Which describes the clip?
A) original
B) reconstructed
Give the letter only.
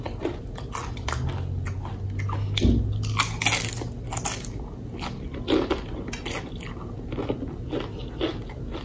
A